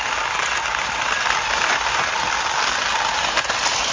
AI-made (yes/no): no